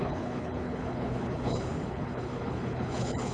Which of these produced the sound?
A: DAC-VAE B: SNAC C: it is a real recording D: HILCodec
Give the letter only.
D